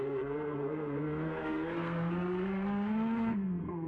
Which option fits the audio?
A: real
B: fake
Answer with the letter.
B